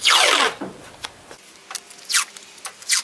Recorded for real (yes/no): yes